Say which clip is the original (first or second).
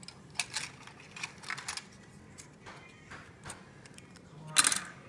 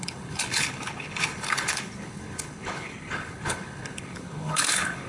first